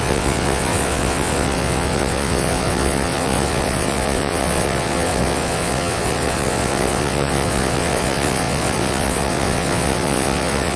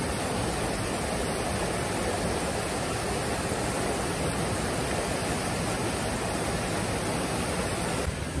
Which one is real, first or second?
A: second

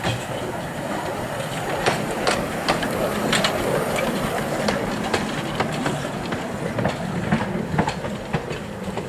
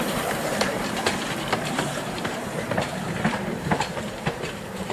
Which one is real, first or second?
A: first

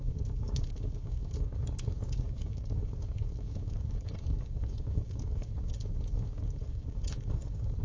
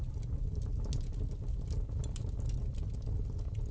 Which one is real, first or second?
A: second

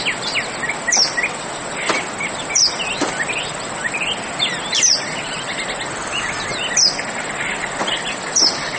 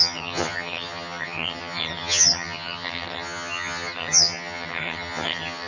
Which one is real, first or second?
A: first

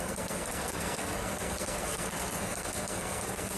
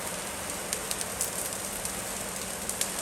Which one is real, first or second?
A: second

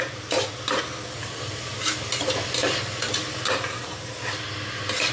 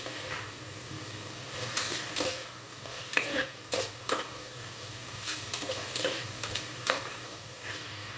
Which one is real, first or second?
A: first